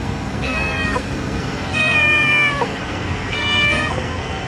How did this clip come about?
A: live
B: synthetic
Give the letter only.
B